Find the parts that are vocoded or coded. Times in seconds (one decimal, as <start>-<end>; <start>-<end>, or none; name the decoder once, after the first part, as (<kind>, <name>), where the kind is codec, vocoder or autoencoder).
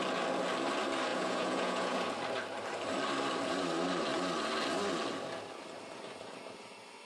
1.1-2.1 (vocoder, Vocos)